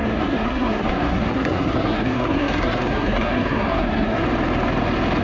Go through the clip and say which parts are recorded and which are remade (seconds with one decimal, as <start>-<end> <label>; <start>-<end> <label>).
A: 0.0-4.2 remade; 4.2-5.2 recorded